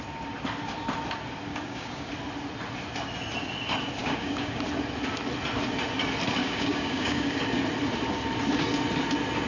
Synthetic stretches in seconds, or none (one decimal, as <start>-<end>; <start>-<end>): 1.5-2.1; 4.0-4.6; 6.4-7.4

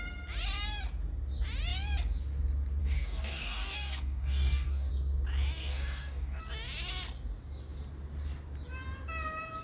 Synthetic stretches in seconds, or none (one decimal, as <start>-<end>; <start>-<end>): 2.8-4.9; 5.6-6.4

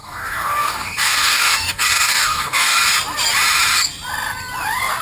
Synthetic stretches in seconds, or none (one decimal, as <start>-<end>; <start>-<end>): 0.0-2.8

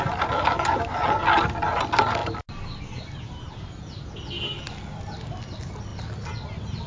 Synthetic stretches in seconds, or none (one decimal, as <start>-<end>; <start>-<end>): none

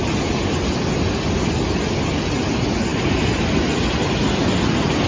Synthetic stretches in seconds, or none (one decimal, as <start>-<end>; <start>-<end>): none